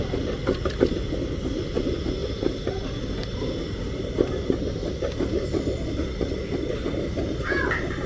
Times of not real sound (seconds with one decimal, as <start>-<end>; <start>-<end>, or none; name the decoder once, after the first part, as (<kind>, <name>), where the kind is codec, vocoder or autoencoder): none